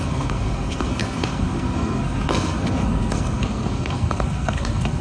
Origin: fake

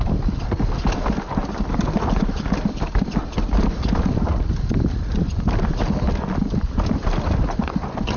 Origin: real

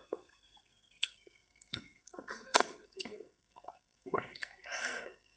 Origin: fake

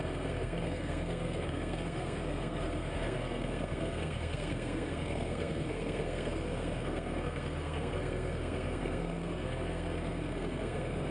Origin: fake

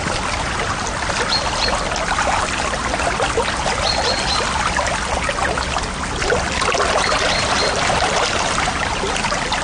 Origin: real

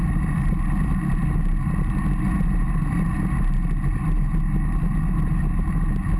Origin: real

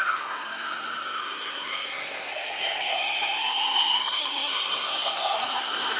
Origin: fake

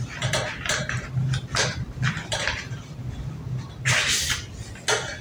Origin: real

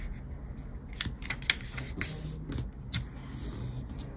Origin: real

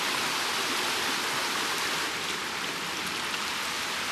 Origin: real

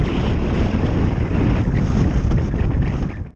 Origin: real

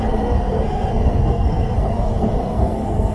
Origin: fake